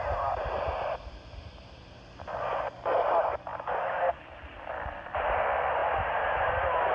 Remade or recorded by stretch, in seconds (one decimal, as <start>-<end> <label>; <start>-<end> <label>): 0.0-6.9 recorded